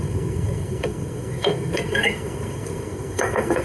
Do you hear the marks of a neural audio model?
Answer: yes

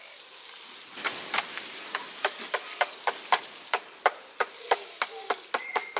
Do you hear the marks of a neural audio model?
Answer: no